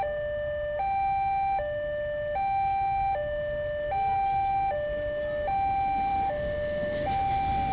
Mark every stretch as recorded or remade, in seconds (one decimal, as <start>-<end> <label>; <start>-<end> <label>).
0.0-6.1 recorded; 6.1-7.7 remade